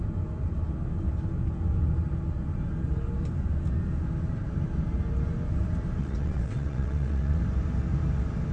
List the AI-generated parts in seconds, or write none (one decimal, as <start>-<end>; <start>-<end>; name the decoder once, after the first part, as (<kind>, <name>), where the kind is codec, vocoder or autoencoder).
6.0-7.4 (vocoder, WaveNeXt)